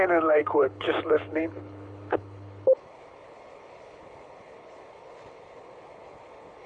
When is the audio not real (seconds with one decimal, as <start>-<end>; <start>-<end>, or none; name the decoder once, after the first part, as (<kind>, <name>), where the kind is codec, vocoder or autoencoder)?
0.0-6.7 (codec, HILCodec)